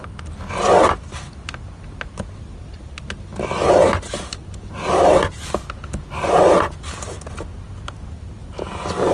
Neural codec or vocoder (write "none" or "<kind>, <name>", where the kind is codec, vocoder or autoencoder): none